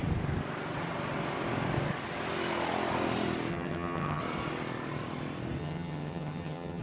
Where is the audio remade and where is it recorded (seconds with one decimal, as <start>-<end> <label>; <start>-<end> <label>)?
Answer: 0.0-3.5 recorded; 3.5-4.2 remade; 4.2-5.6 recorded; 5.6-6.8 remade